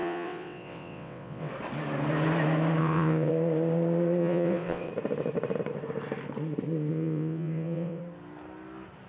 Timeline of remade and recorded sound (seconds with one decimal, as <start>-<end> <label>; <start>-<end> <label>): 0.0-1.5 remade; 1.5-2.8 recorded; 2.8-3.3 remade; 3.3-4.2 recorded; 4.2-4.9 remade; 4.9-6.9 recorded; 6.9-8.0 remade; 8.0-9.1 recorded